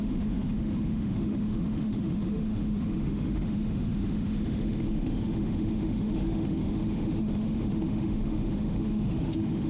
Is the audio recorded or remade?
remade